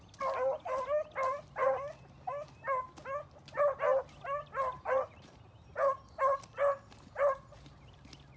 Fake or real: real